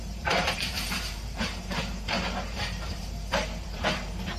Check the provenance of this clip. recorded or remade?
remade